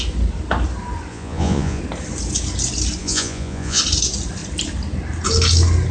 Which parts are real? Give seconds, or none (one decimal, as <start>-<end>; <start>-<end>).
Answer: 0.0-1.1; 1.8-3.0; 3.8-5.9